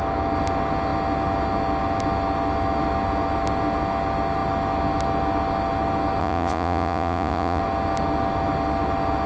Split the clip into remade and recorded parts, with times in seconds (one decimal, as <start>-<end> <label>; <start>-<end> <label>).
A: 0.0-6.2 recorded; 6.2-7.6 remade; 7.6-9.3 recorded